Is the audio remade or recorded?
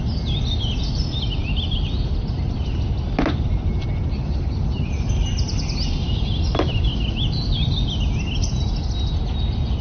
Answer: recorded